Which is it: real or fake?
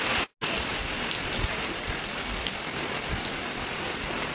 real